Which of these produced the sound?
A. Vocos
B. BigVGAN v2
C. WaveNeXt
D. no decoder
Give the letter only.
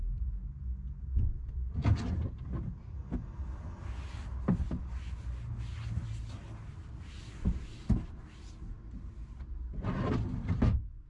D